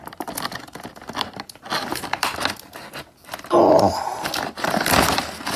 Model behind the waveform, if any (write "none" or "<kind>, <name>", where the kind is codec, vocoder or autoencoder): none